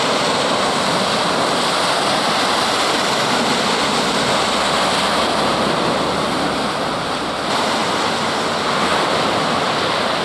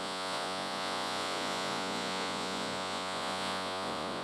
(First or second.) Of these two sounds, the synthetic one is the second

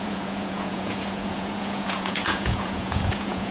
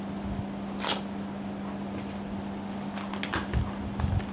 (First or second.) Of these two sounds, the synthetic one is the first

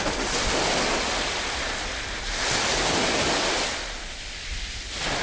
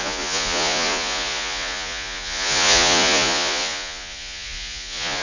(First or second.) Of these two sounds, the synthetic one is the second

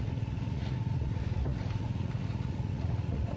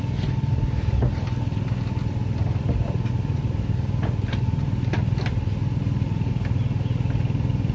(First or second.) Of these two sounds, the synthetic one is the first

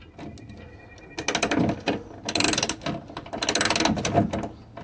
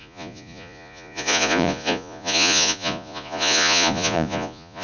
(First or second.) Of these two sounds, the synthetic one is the second